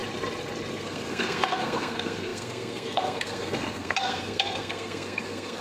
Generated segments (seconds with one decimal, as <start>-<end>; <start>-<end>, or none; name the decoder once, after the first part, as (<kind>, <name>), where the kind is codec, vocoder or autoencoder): 0.7-5.6 (codec, SNAC)